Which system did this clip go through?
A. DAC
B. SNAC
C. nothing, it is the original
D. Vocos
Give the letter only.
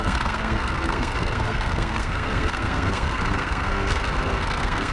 B